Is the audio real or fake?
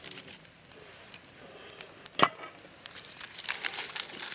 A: real